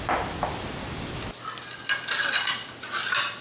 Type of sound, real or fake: real